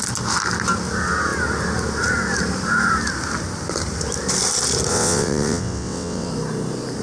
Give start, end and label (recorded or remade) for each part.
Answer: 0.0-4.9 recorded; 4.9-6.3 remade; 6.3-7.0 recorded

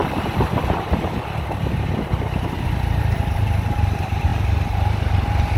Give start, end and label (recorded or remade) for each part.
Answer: 0.0-3.4 remade; 3.4-5.6 recorded

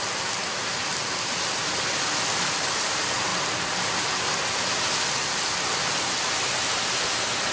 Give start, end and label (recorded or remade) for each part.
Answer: 0.0-7.5 recorded

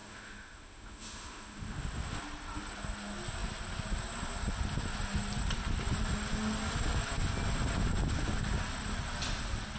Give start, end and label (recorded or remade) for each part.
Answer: 0.0-2.2 remade; 2.2-9.8 recorded

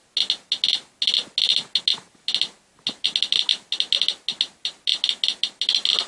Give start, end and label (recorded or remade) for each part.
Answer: 0.0-6.1 recorded

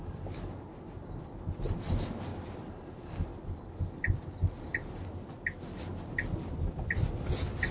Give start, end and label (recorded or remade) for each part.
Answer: 0.0-7.7 recorded

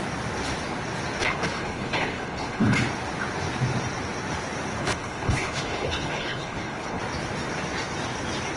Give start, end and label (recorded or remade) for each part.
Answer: 0.0-1.2 recorded; 1.2-2.8 remade; 2.8-4.8 recorded; 4.8-7.0 remade; 7.0-8.6 recorded

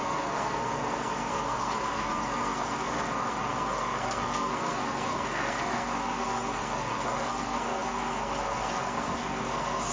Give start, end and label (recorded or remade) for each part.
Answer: 0.0-9.9 remade